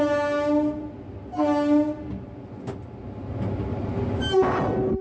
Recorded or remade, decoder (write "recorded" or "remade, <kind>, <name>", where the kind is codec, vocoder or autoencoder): recorded